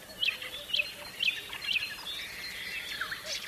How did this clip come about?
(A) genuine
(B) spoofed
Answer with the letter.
A